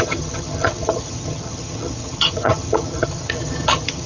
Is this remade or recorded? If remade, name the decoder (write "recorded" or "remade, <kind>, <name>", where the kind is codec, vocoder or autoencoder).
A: remade, vocoder, HiFi-GAN